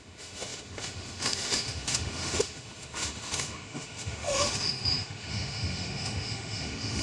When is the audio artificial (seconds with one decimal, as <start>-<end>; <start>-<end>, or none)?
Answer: 0.0-7.0